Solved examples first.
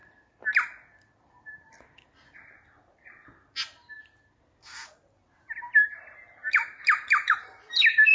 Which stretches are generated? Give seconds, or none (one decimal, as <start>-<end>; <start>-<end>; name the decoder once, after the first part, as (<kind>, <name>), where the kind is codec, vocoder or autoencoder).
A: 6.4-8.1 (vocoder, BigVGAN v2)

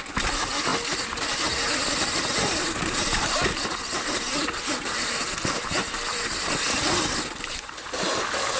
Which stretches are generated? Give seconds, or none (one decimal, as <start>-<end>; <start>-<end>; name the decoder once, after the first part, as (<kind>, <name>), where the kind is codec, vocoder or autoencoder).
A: 0.0-8.6 (vocoder, BigVGAN v2)

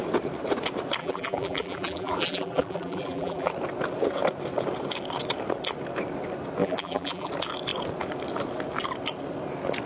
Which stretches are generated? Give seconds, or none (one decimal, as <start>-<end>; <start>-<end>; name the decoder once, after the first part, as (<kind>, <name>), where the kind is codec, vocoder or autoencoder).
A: 1.0-3.5 (vocoder, BigVGAN v2); 6.6-7.3

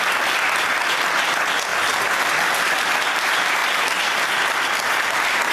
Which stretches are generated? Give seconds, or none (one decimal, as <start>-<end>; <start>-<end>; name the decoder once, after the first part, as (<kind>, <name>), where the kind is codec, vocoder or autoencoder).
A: none